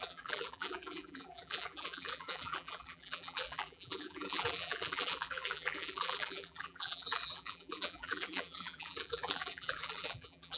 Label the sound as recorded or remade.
remade